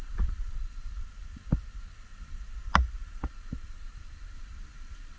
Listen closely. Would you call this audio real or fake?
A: fake